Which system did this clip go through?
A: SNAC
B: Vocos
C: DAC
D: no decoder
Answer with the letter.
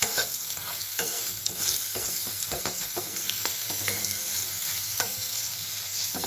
A